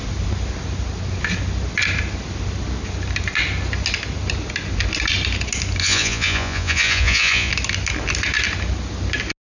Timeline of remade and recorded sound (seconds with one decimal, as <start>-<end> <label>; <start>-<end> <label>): 0.0-5.8 recorded; 5.8-7.5 remade; 7.5-9.5 recorded